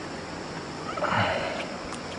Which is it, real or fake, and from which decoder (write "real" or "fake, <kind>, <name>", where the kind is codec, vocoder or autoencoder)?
fake, vocoder, Vocos